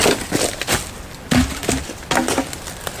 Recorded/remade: recorded